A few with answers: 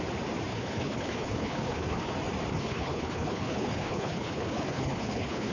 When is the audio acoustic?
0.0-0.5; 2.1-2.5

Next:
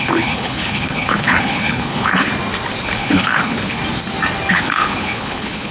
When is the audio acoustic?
2.3-2.8; 3.8-4.5

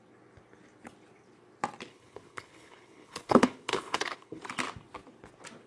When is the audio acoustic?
0.0-1.9; 4.4-5.7

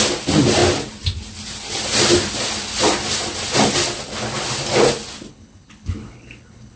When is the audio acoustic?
0.0-5.3

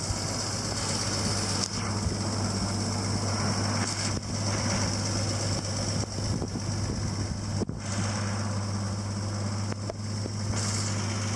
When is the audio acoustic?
0.0-11.4

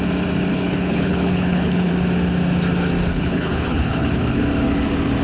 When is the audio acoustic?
0.0-0.5; 1.9-3.1; 4.4-5.2

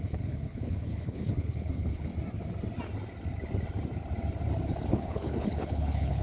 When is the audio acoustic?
2.1-4.9

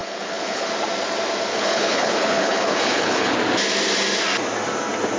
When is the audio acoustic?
0.7-1.5; 3.3-5.2